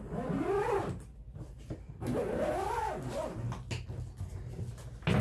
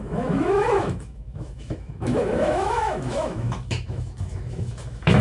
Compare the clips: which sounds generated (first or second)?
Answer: second